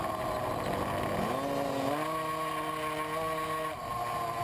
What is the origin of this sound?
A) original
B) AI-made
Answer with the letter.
A